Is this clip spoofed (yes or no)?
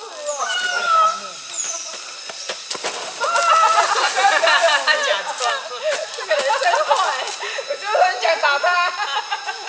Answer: no